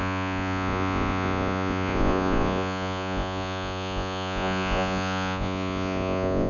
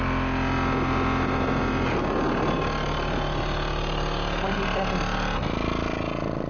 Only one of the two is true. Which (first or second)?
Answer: second